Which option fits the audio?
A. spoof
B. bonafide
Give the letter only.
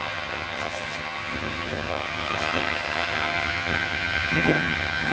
A